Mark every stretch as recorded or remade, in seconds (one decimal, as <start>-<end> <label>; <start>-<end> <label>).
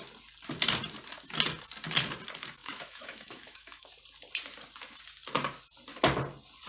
0.0-2.6 recorded; 2.6-3.9 remade; 3.9-6.7 recorded